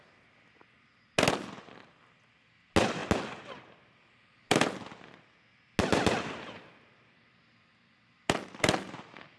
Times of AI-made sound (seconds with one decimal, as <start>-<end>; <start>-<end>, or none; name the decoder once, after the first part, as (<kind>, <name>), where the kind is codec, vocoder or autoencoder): none